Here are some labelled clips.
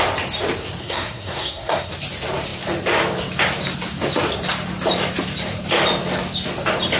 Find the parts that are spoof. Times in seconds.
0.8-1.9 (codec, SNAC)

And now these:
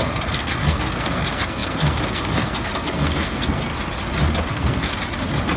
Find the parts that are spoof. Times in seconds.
0.0-3.7 (codec, SNAC); 4.5-4.9